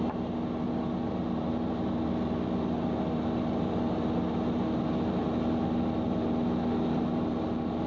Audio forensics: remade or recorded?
recorded